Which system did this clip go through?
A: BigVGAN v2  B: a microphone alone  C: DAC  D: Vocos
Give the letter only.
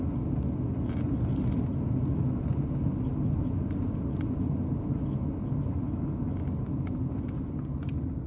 B